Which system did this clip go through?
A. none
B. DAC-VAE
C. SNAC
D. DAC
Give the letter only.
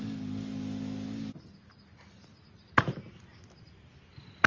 A